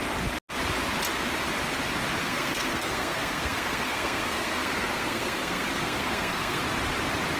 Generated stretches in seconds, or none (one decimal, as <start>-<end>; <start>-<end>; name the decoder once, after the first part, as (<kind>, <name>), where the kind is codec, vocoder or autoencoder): 2.2-6.6 (codec, SNAC)